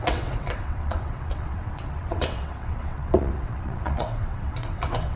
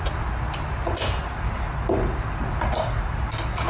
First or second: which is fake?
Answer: first